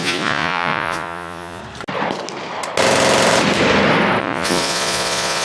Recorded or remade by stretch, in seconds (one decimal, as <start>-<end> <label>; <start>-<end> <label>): 0.0-1.6 remade; 1.6-4.2 recorded; 4.2-5.4 remade